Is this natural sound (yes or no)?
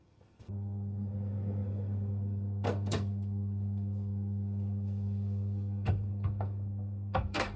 no